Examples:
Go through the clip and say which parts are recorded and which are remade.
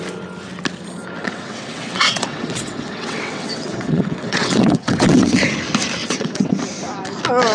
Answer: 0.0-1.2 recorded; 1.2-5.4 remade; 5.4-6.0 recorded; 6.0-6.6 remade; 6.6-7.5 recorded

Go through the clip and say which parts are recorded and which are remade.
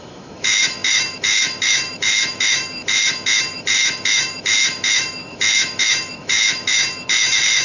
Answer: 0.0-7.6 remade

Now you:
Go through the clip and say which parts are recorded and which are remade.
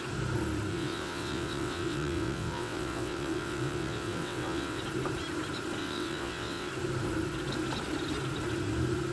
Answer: 0.0-0.7 recorded; 0.7-4.8 remade; 4.8-5.8 recorded; 5.8-6.7 remade; 6.7-9.1 recorded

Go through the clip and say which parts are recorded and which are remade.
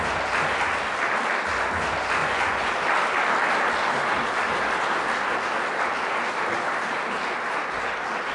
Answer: 0.0-2.2 recorded; 2.2-2.7 remade; 2.7-8.3 recorded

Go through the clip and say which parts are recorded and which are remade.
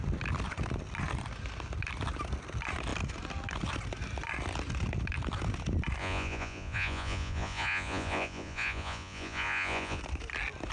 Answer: 0.0-6.0 recorded; 6.0-10.0 remade; 10.0-10.7 recorded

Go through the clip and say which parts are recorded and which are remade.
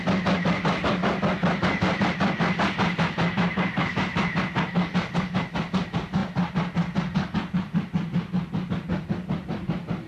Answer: 0.0-10.1 recorded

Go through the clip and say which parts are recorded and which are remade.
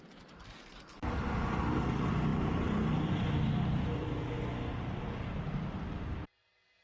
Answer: 0.0-1.2 recorded; 1.2-1.9 remade; 1.9-2.3 recorded; 2.3-4.3 remade; 4.3-6.8 recorded